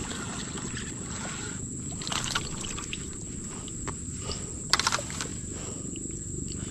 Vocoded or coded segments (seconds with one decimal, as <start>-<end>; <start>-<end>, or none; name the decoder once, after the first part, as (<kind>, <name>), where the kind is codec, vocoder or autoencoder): none